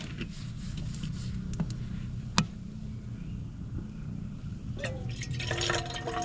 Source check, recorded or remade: recorded